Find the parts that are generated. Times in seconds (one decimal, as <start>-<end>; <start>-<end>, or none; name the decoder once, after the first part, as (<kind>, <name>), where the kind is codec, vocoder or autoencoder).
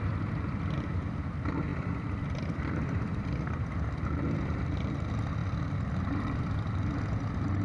0.0-5.4 (vocoder, BigVGAN v2); 5.9-7.6